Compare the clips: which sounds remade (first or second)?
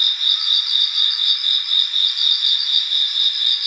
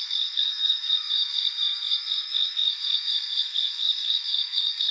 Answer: second